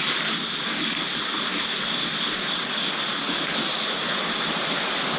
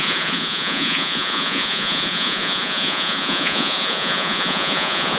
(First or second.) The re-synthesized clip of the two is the second